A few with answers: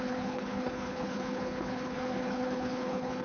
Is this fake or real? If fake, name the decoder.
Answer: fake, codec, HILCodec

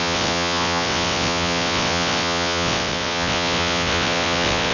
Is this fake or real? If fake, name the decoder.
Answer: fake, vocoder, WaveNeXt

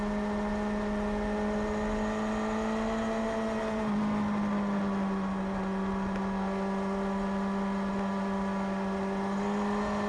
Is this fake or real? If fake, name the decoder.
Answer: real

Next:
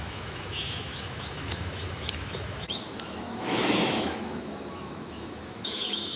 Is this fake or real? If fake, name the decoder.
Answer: fake, autoencoder, DAC-VAE